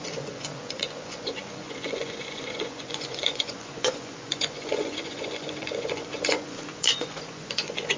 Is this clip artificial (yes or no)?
yes